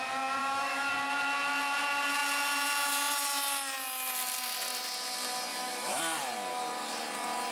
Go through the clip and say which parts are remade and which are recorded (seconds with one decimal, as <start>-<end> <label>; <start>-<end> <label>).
0.0-0.4 recorded; 0.4-0.9 remade; 0.9-5.5 recorded; 5.5-6.0 remade; 6.0-7.5 recorded